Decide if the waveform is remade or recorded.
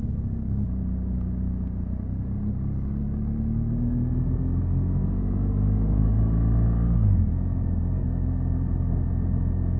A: recorded